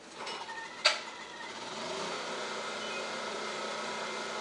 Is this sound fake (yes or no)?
no